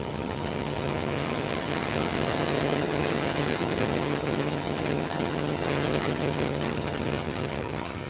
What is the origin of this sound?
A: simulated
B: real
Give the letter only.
A